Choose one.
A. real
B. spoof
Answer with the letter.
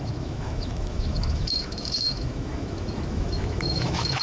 B